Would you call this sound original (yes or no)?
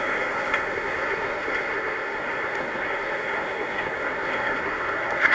no